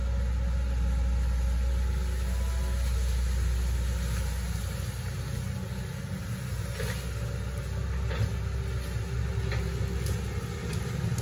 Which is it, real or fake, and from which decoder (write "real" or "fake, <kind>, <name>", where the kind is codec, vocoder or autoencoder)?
real